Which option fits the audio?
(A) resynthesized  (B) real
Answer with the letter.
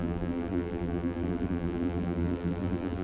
A